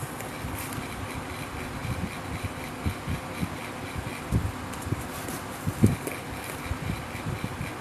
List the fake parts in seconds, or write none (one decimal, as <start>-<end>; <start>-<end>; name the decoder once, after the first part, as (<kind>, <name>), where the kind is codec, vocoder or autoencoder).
none